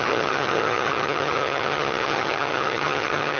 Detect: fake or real fake